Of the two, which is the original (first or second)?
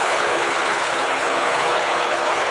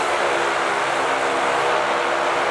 second